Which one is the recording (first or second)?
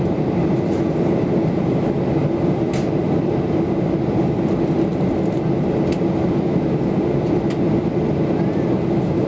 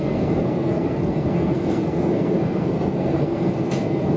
first